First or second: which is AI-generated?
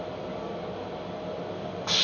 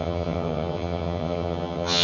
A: second